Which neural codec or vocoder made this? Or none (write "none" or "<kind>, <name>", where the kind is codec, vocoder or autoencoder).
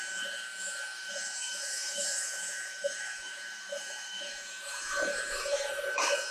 autoencoder, DAC-VAE